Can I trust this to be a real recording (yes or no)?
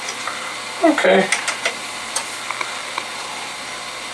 yes